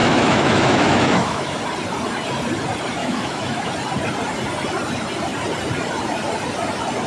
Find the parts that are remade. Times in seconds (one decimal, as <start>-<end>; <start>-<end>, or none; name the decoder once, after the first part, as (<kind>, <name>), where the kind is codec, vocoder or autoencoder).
0.0-1.6 (autoencoder, DAC-VAE); 3.0-3.7